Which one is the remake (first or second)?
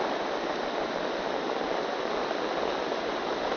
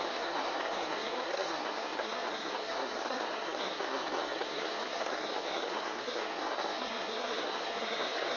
second